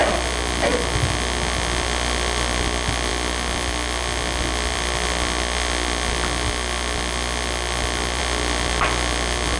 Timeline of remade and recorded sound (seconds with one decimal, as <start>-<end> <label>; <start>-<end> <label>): 0.0-9.6 recorded